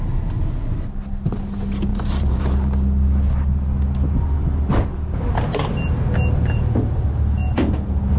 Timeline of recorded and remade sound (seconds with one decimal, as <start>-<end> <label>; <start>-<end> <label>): 0.0-1.9 recorded; 1.9-2.4 remade; 2.4-8.2 recorded